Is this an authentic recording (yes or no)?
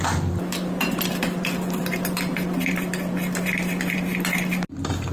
no